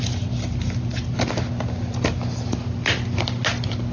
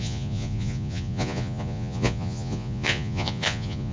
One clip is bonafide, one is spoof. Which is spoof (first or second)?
second